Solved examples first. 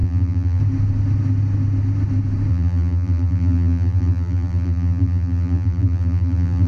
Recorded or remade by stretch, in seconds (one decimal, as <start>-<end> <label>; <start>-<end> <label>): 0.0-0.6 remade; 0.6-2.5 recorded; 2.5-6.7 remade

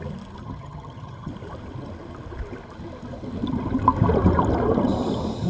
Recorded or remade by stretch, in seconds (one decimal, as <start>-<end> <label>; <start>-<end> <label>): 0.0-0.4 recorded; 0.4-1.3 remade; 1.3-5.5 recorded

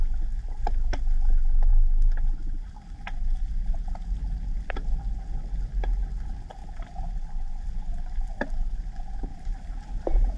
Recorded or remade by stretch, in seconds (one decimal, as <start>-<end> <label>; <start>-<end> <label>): 0.0-6.6 recorded; 6.6-7.5 remade; 7.5-9.3 recorded; 9.3-10.4 remade

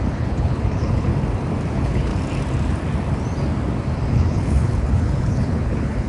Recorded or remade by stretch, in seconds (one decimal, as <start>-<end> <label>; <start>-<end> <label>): 0.0-1.1 remade; 1.1-1.7 recorded; 1.7-2.1 remade; 2.1-4.1 recorded; 4.1-6.1 remade

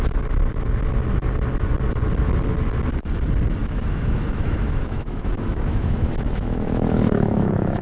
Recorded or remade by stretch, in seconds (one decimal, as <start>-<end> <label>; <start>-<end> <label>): 0.0-3.6 recorded; 3.6-7.8 remade

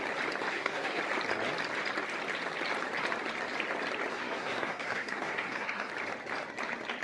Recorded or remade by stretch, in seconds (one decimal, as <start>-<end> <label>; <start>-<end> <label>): 0.0-0.5 recorded; 0.5-1.0 remade; 1.0-4.1 recorded; 4.1-5.9 remade; 5.9-7.0 recorded